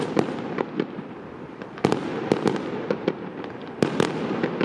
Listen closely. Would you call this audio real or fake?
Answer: real